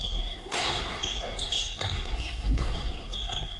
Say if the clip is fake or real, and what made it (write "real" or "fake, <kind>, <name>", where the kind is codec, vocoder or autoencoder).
fake, codec, SNAC